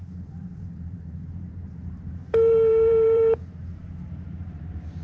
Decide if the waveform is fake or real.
fake